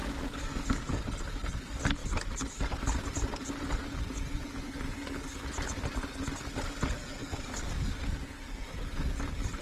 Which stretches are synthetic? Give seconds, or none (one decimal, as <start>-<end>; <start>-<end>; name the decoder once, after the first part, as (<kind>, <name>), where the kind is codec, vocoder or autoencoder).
0.0-1.0 (codec, DAC); 7.2-7.9